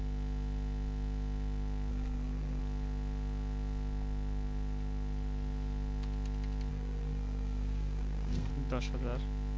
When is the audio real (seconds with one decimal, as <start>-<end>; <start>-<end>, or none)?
0.0-1.9; 2.6-6.7; 8.5-9.6